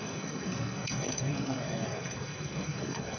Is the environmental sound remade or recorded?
remade